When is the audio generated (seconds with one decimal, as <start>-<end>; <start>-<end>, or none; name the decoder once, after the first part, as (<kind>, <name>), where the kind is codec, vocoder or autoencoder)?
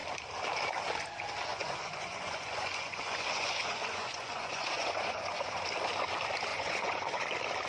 1.5-5.6 (vocoder, Vocos); 6.5-7.2